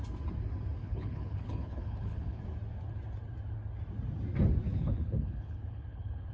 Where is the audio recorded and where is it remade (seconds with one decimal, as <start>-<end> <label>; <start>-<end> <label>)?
0.0-0.8 recorded; 0.8-2.4 remade; 2.4-4.7 recorded; 4.7-6.3 remade